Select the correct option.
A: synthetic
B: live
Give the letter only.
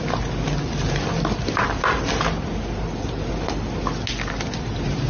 B